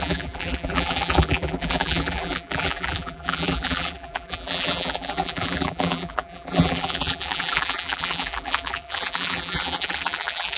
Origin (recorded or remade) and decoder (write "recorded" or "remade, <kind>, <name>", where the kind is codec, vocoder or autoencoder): remade, vocoder, BigVGAN v2